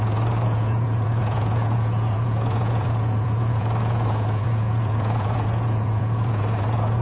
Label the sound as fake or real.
fake